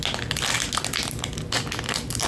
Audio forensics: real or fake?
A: real